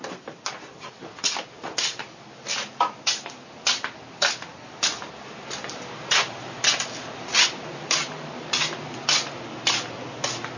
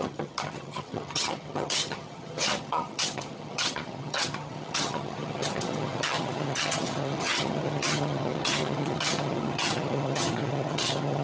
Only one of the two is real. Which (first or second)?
first